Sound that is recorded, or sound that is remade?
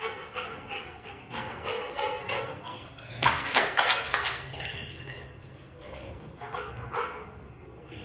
remade